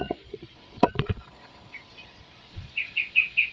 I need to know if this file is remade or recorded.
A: remade